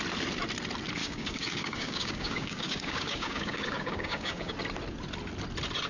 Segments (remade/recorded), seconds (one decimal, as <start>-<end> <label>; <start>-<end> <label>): 0.0-1.0 recorded; 1.0-4.5 remade; 4.5-5.9 recorded